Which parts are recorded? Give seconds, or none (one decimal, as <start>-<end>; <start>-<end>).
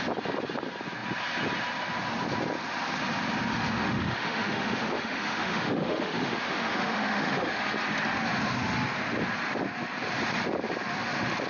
0.0-3.5; 7.6-11.5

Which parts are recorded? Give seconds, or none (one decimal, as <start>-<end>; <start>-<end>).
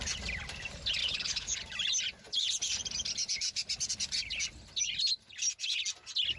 0.0-1.0; 1.6-6.4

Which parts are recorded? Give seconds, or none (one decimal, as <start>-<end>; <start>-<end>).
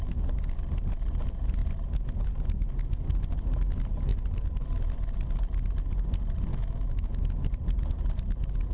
0.0-6.5; 7.1-8.7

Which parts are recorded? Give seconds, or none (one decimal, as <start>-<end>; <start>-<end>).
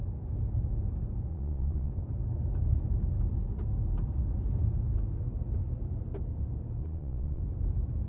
0.0-1.3; 1.9-6.8; 7.4-8.1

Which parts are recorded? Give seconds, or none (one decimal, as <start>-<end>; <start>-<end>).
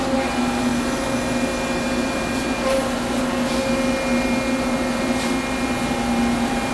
0.0-6.7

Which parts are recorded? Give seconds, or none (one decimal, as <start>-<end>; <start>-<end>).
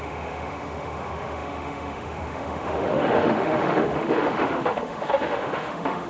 none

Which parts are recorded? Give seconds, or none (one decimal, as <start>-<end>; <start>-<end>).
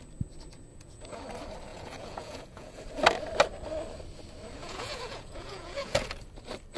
0.0-0.7; 1.2-1.7; 2.8-4.6; 6.0-6.8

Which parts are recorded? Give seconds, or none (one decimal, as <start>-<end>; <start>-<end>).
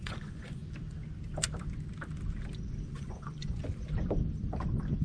0.6-2.9; 3.6-5.0